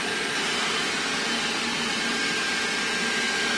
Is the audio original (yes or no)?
yes